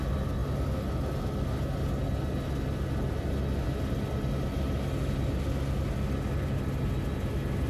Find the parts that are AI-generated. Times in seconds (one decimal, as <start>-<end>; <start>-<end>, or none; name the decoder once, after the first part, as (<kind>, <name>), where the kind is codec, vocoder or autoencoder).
none